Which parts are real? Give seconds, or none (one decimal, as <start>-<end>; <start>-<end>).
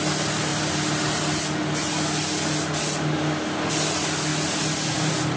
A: 0.0-5.4